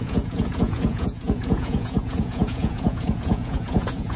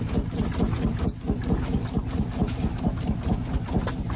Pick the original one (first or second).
second